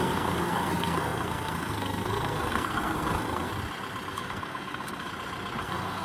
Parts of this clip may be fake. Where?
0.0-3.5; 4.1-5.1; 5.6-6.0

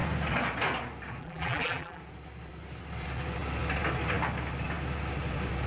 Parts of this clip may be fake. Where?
1.2-2.0

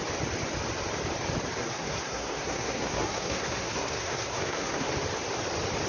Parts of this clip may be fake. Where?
1.6-4.9

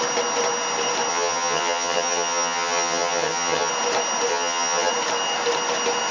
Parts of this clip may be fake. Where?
1.1-3.7; 4.3-4.9

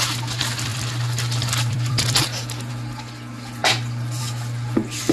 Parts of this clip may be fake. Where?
0.7-2.7; 3.6-4.2

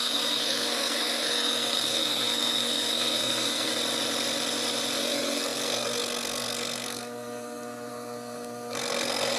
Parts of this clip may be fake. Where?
0.0-3.7; 5.0-9.4

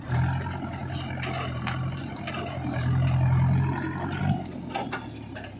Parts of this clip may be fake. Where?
none

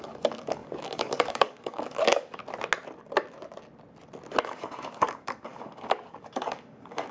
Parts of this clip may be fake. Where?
0.0-2.4; 4.4-7.1